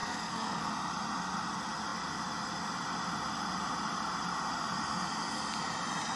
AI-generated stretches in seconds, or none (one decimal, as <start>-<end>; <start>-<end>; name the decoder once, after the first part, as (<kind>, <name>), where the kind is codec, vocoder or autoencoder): 0.0-0.7 (codec, SNAC)